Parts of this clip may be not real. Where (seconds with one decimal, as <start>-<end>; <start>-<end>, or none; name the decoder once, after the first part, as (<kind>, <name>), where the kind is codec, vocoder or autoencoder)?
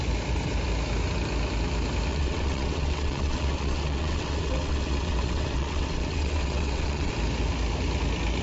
2.1-7.1 (vocoder, WaveNeXt)